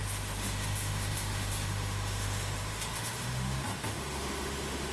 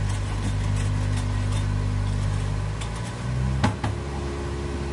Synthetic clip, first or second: first